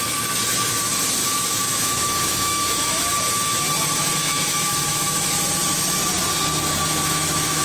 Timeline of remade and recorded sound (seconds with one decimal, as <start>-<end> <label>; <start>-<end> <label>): 0.0-1.2 recorded; 1.2-3.0 remade; 3.0-4.2 recorded; 4.2-5.4 remade; 5.4-6.9 recorded; 6.9-7.6 remade